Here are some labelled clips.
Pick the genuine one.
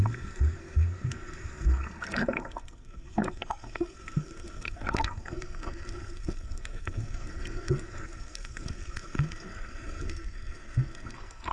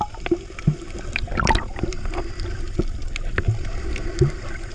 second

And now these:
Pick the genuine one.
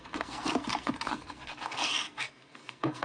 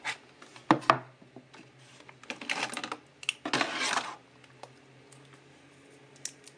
second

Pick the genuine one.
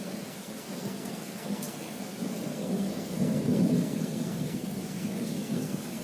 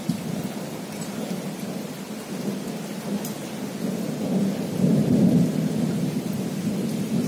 second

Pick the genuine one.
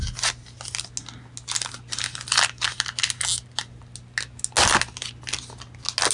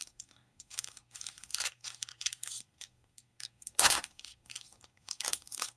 first